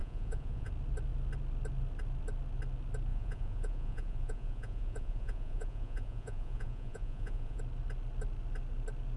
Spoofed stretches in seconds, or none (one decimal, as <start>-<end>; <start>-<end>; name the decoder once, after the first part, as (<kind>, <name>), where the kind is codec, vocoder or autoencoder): 0.0-0.7 (vocoder, Vocos); 3.1-7.6